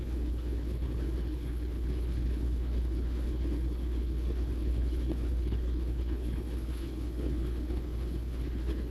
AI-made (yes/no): yes